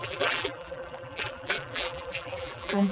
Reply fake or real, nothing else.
fake